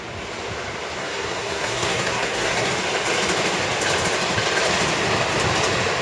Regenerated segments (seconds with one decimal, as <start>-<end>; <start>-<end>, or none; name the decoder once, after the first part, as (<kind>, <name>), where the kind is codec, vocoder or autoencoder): 1.0-2.7 (codec, SNAC)